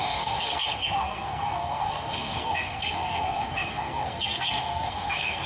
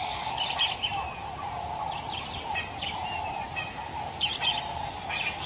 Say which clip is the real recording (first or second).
second